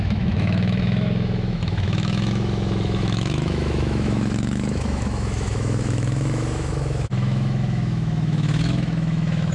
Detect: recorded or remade remade